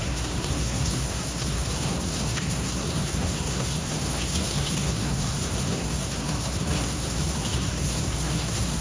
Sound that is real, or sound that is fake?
fake